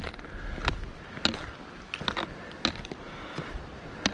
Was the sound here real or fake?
real